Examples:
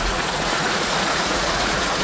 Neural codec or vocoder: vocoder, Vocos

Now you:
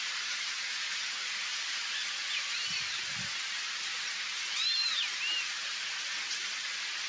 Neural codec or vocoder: none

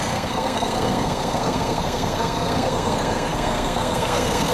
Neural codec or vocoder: codec, SNAC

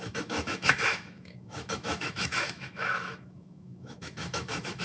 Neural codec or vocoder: autoencoder, DAC-VAE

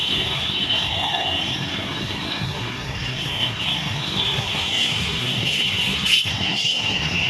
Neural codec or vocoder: codec, SNAC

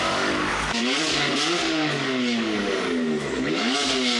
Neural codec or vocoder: codec, DAC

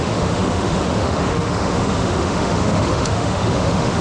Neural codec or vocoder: autoencoder, DAC-VAE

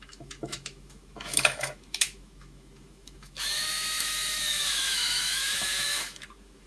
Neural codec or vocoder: autoencoder, DAC-VAE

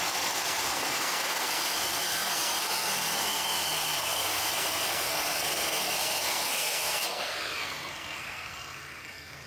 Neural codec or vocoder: codec, SNAC